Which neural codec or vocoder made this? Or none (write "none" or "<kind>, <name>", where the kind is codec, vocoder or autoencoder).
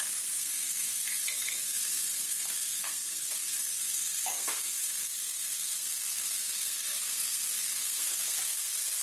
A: codec, SNAC